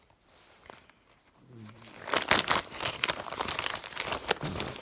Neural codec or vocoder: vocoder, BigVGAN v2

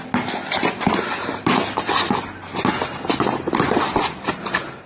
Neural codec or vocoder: none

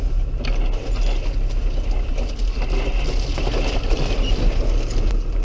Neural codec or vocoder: none